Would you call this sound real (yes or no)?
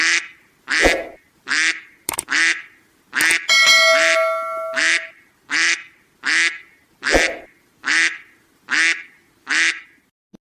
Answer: yes